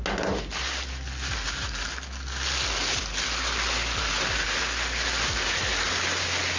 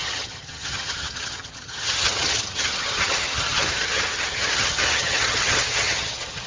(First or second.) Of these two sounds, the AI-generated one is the second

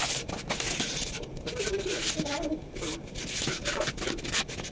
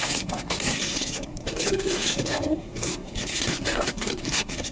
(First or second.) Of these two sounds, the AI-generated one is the second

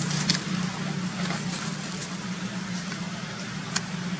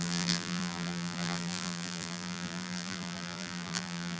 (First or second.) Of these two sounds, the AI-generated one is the second